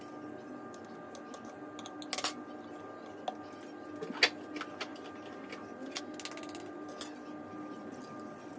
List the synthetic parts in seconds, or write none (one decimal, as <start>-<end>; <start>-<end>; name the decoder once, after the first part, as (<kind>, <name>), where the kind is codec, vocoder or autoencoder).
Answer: none